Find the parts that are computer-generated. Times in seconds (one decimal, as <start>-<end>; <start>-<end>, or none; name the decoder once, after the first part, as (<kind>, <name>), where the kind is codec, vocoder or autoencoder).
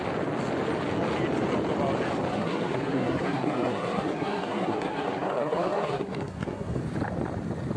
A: 2.3-6.8 (codec, SNAC)